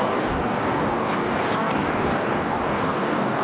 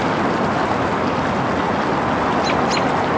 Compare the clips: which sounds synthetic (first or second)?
first